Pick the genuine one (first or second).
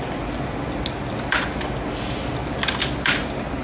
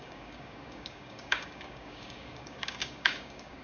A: first